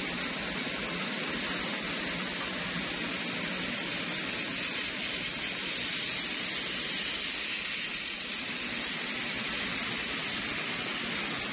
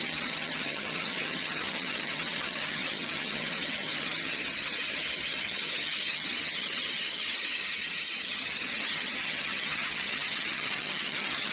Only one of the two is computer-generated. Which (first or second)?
second